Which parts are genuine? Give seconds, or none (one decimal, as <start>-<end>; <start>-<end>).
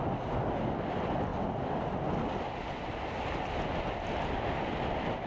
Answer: 0.0-5.3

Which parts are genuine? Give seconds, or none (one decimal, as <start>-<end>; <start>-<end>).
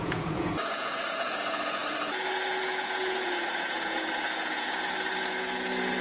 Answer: none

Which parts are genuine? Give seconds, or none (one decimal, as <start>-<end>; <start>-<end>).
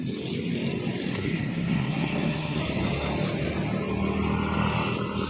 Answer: 0.0-1.1; 2.6-5.3